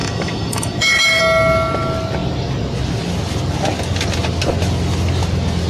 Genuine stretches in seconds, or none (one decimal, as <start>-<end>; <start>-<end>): 1.2-5.7